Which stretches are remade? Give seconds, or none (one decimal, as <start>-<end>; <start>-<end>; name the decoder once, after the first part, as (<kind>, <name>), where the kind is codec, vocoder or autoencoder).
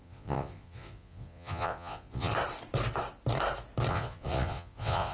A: 0.0-2.3 (vocoder, Vocos); 3.9-5.1